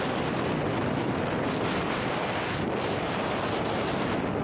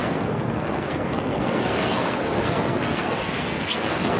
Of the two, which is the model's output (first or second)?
second